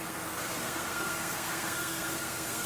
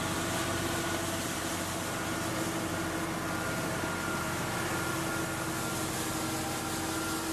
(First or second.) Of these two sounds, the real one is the second